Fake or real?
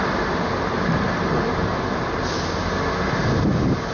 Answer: real